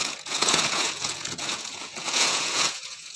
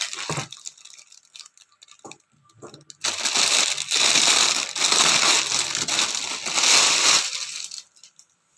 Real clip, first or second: second